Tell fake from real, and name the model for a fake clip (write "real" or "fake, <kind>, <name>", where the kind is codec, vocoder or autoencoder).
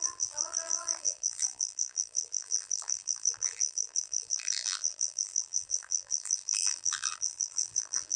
fake, vocoder, BigVGAN v2